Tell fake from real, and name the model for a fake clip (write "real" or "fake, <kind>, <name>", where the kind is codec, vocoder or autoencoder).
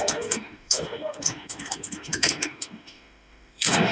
fake, autoencoder, DAC-VAE